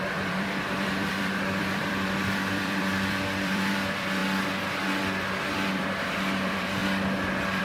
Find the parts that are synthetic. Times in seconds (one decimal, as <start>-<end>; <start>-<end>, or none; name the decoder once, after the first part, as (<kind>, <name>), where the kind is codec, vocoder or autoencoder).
0.0-4.2 (vocoder, BigVGAN v2); 5.4-6.8